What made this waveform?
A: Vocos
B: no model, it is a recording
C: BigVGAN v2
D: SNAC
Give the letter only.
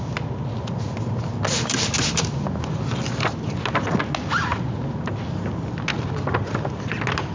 B